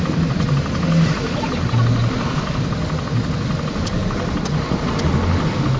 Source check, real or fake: real